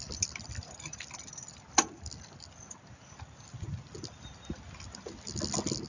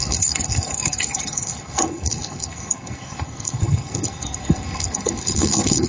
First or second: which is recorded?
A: first